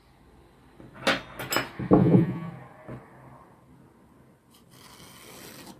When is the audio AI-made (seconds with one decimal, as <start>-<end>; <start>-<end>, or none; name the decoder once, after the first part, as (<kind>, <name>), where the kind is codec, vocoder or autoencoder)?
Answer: 2.0-2.5 (vocoder, Vocos)